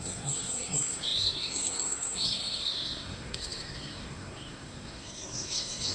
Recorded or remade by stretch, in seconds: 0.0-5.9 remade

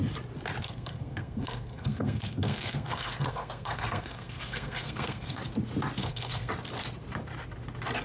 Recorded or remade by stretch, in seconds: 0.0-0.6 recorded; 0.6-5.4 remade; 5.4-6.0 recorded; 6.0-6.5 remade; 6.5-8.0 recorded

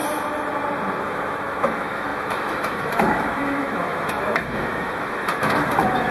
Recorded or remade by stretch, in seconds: 0.0-1.0 recorded; 1.0-6.1 remade

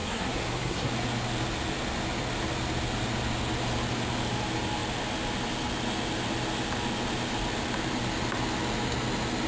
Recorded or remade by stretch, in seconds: 0.0-0.9 remade; 0.9-9.5 recorded

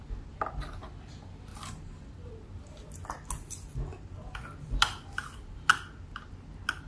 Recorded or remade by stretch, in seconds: 0.0-1.5 recorded; 1.5-2.3 remade; 2.3-6.9 recorded

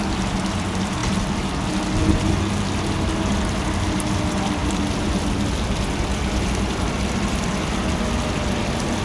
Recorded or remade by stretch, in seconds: 0.0-4.6 recorded; 4.6-8.0 remade; 8.0-9.0 recorded